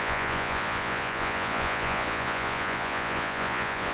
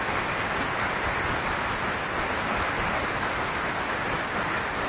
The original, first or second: second